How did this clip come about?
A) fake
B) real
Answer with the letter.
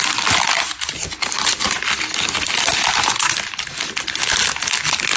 B